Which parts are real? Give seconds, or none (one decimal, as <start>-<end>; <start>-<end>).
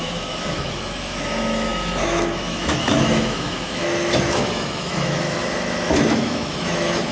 none